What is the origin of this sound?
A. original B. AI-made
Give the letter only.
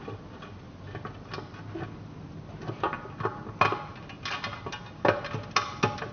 A